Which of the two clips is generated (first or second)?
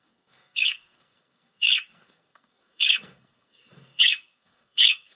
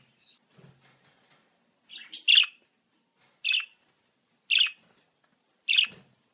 first